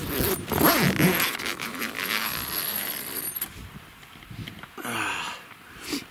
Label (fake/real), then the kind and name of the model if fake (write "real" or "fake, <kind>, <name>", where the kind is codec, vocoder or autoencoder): real